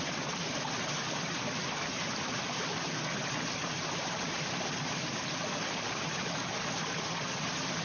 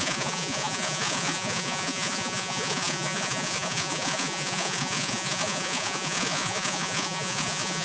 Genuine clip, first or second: first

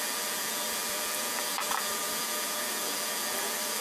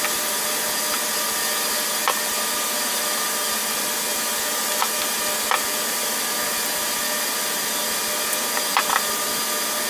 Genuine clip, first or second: second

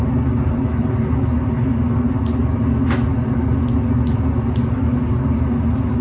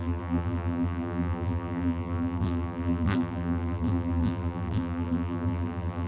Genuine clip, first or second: first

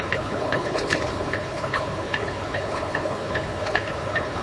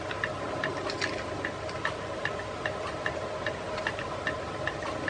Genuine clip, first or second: second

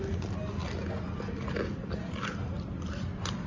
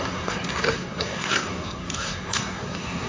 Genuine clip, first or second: first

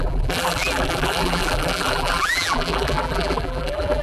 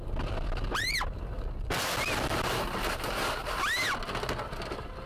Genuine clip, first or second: second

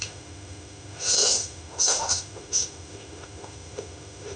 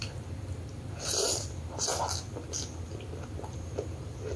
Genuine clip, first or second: second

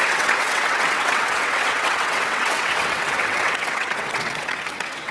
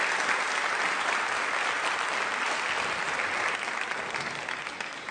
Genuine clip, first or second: second